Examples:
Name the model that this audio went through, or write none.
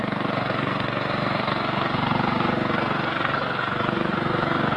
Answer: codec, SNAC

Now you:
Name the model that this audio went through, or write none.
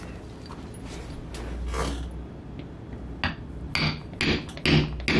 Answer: none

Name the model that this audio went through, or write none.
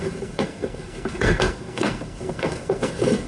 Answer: codec, SNAC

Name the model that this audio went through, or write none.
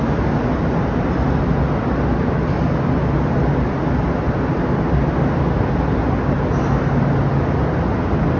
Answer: none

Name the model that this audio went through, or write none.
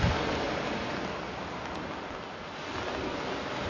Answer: none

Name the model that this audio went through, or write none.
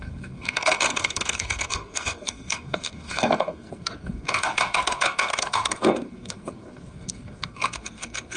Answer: codec, SNAC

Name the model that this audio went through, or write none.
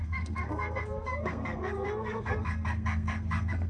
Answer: codec, SNAC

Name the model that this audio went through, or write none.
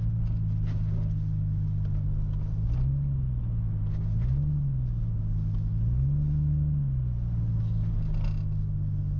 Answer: none